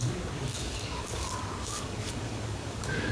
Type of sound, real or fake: fake